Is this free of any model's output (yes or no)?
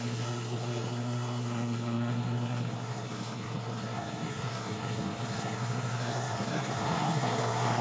no